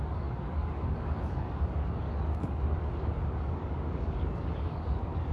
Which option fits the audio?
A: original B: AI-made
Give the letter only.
B